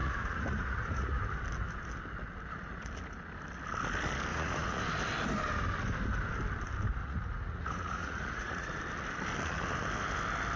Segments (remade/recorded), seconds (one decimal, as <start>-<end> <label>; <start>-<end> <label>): 0.0-1.2 remade; 1.2-4.3 recorded; 4.3-4.8 remade; 4.8-7.0 recorded; 7.0-8.8 remade; 8.8-10.6 recorded